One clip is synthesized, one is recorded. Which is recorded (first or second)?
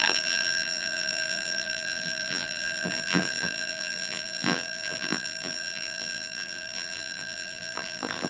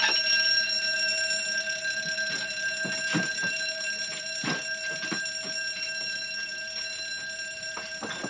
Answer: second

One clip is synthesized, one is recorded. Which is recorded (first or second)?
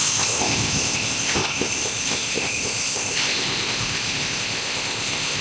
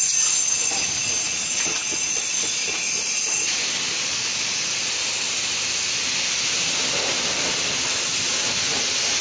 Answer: second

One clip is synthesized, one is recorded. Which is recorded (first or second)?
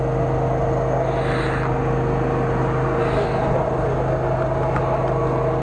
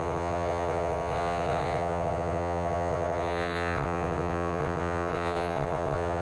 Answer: first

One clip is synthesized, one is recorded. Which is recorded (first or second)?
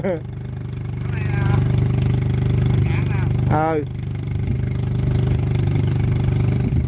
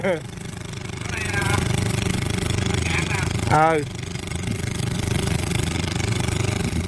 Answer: first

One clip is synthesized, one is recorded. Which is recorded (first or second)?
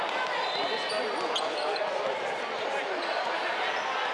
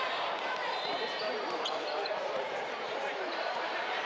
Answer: first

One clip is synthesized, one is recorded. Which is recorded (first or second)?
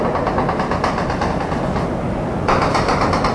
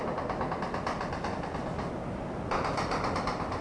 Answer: first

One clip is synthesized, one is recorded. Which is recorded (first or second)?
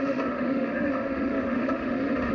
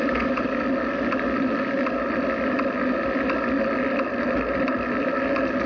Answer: second